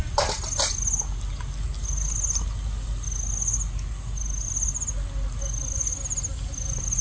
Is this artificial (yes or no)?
no